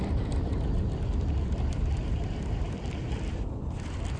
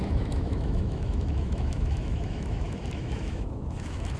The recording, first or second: first